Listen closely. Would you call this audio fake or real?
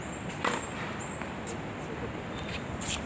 real